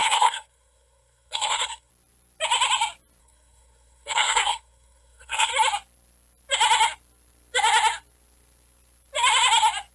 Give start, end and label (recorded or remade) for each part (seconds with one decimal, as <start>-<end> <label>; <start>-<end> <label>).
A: 0.0-1.9 remade; 1.9-3.2 recorded; 3.2-5.5 remade; 5.5-9.9 recorded